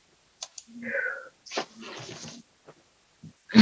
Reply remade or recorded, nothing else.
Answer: recorded